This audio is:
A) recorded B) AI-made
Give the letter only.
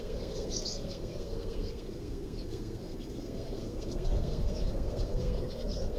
B